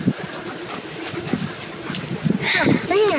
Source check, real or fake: real